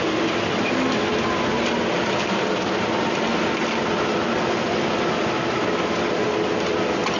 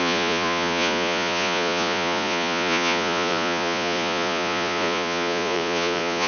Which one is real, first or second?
first